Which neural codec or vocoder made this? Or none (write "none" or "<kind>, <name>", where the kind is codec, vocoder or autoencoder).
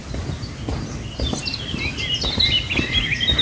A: none